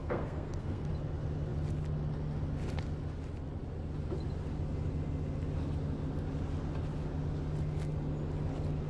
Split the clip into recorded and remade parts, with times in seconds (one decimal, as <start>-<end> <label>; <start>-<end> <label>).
0.0-0.9 remade; 0.9-8.9 recorded